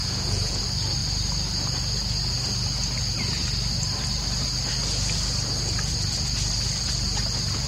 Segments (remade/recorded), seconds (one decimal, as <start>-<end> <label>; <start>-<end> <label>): 0.0-0.6 remade; 0.6-7.7 recorded